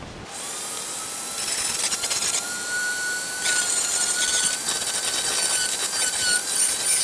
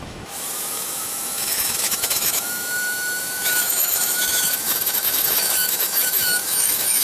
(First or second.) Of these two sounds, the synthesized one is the second